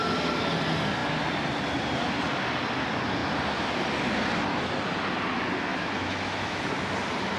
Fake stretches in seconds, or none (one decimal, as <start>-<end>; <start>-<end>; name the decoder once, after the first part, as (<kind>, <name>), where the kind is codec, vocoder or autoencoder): 5.7-6.6 (autoencoder, DAC-VAE)